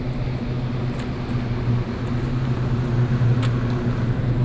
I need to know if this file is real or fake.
real